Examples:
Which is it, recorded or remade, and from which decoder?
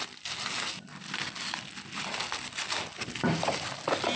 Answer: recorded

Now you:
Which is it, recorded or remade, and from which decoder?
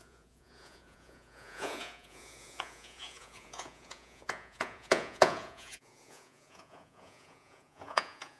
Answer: remade, vocoder, Vocos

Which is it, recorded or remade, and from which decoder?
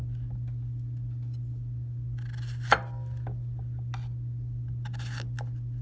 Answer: recorded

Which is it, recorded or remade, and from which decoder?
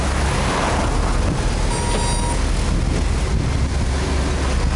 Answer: recorded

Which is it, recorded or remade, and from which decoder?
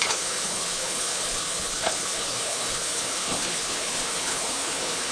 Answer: remade, codec, HILCodec